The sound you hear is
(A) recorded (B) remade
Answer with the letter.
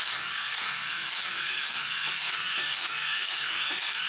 B